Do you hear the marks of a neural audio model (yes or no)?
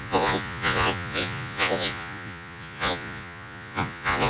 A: yes